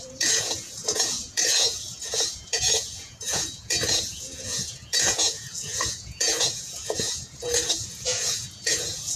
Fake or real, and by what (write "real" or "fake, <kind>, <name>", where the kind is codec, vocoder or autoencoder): fake, vocoder, Vocos